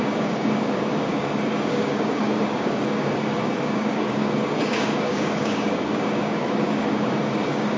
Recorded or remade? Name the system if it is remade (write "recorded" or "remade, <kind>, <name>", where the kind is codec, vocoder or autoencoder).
remade, codec, DAC